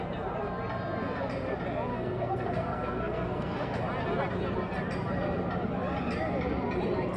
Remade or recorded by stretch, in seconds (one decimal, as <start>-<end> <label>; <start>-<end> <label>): 0.0-1.9 recorded; 1.9-3.8 remade; 3.8-7.2 recorded